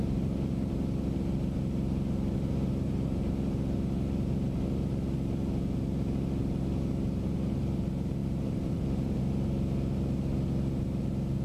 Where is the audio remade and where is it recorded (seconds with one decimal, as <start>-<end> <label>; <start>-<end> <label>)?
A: 0.0-8.2 recorded; 8.2-9.2 remade; 9.2-11.4 recorded